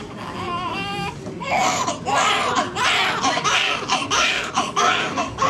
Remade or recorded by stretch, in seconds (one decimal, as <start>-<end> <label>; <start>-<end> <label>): 0.0-1.9 remade; 1.9-3.2 recorded; 3.2-5.5 remade